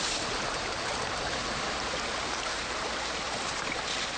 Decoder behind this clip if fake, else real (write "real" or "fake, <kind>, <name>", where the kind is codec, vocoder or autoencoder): fake, vocoder, BigVGAN v2